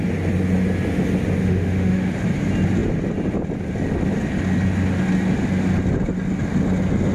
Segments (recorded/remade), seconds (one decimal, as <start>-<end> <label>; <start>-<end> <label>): 0.0-1.4 recorded; 1.4-2.1 remade; 2.1-7.1 recorded